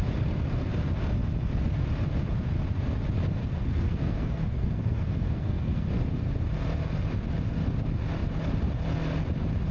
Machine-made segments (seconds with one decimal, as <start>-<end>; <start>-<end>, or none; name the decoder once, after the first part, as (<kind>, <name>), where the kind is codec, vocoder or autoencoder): 3.4-5.9 (codec, SNAC)